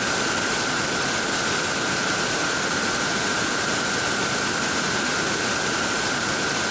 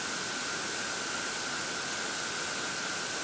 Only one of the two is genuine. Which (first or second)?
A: second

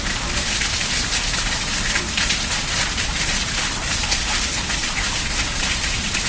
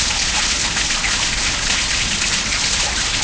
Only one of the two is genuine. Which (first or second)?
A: second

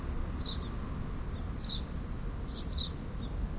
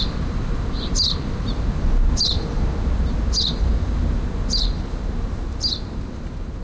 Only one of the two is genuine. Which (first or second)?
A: first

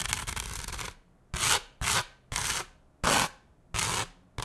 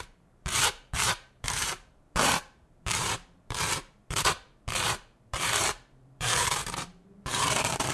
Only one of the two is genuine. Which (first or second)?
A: first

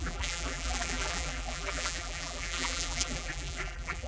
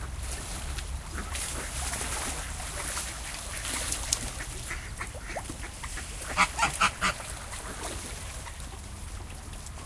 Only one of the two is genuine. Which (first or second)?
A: second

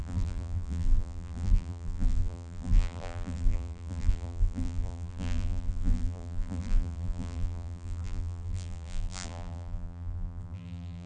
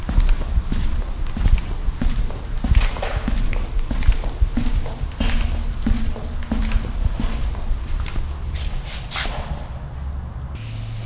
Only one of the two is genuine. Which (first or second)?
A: second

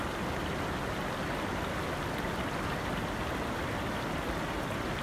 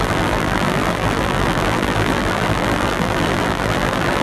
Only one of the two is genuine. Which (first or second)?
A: first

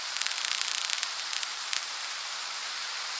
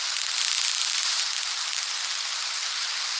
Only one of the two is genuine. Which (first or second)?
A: second